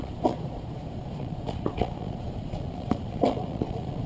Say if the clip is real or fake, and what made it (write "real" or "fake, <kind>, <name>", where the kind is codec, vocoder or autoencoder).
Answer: fake, vocoder, Vocos